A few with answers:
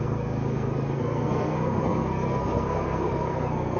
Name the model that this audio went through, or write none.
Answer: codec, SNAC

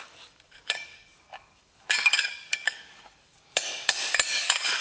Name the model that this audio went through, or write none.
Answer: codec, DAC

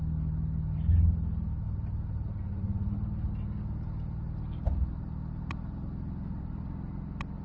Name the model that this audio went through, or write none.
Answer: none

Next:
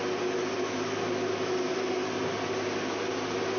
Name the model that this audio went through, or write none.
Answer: none